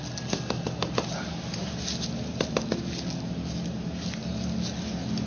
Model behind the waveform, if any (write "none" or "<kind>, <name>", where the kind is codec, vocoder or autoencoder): none